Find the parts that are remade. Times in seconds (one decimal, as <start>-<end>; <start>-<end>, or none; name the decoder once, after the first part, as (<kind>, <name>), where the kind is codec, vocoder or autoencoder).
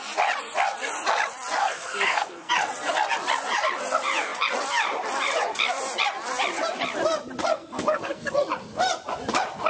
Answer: 1.6-2.5 (codec, SNAC); 7.5-8.4